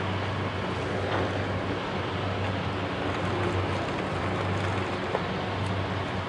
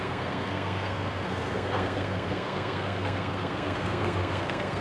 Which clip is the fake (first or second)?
second